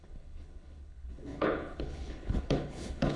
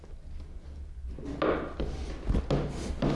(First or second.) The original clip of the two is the second